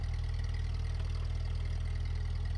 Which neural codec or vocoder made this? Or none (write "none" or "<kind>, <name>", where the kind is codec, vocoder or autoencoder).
none